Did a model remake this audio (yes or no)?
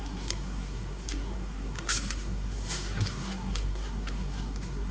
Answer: yes